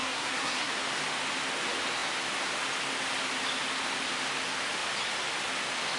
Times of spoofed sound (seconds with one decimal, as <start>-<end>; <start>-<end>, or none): 0.0-0.7